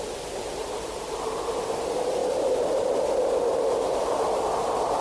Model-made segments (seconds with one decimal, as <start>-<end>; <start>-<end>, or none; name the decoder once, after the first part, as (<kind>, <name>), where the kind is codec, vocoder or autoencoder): 0.6-1.5 (vocoder, BigVGAN v2)